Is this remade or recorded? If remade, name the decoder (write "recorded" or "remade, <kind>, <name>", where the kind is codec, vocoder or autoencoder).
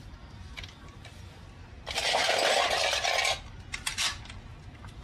recorded